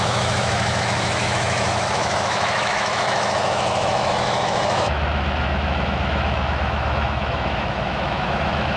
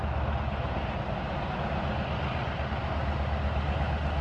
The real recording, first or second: second